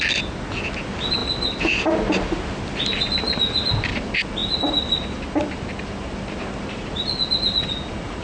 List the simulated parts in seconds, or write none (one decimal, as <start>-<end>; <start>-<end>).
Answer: none